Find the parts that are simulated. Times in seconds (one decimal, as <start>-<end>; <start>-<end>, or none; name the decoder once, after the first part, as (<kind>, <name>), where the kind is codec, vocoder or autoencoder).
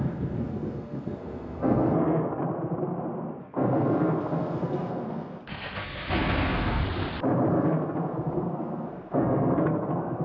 0.0-2.4 (codec, SNAC); 3.4-6.8; 7.5-10.2